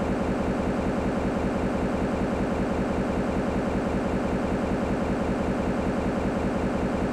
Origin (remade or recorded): recorded